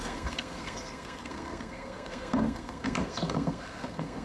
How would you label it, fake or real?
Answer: fake